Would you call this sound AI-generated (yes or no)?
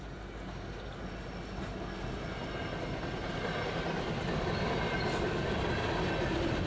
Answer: no